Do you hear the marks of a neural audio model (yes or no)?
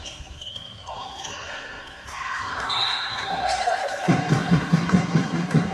yes